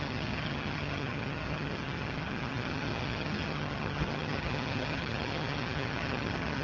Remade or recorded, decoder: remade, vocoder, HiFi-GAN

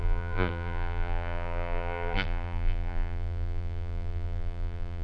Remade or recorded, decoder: remade, vocoder, BigVGAN v2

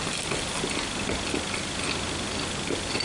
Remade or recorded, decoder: recorded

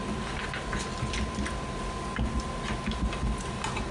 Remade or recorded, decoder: recorded